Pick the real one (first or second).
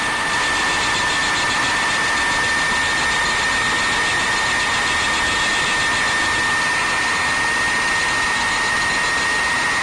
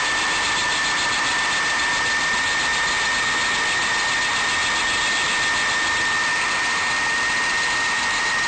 first